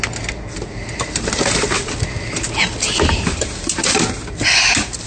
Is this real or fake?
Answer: real